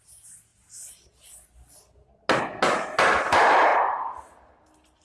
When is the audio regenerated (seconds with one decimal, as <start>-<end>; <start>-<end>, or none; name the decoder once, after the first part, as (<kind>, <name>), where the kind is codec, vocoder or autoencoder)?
none